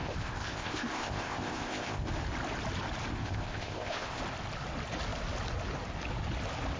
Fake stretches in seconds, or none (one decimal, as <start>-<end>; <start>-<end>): 0.0-2.1; 3.1-4.2